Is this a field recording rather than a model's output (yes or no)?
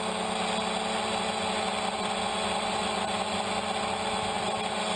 yes